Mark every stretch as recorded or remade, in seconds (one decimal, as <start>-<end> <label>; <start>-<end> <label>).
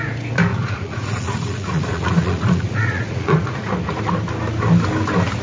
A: 0.0-0.5 recorded; 0.5-3.7 remade; 3.7-5.4 recorded